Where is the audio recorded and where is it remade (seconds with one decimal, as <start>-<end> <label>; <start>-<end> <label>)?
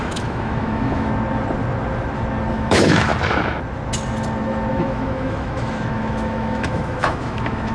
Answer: 0.0-1.1 remade; 1.1-2.5 recorded; 2.5-3.1 remade; 3.1-4.7 recorded; 4.7-7.7 remade